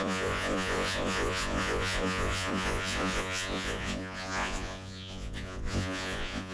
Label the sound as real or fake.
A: fake